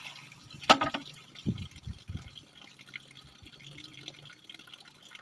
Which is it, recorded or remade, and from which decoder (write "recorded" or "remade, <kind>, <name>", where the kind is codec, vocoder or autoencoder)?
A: recorded